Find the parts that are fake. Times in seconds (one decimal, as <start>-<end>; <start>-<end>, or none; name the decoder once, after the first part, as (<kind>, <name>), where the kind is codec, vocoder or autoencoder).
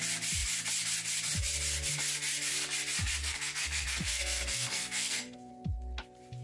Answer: 3.2-5.5 (codec, SNAC)